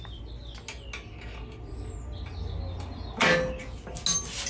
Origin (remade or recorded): recorded